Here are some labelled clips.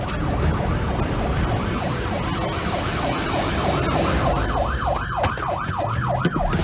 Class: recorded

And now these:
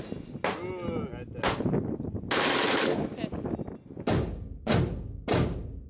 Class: recorded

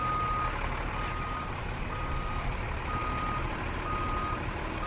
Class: recorded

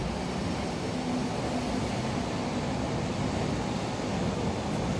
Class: recorded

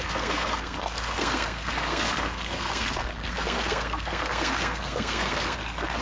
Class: remade